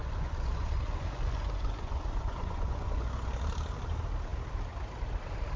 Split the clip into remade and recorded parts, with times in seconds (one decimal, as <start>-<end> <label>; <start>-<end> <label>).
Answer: 0.0-3.4 remade; 3.4-5.6 recorded